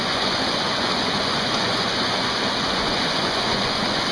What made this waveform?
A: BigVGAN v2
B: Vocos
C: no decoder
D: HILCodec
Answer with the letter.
B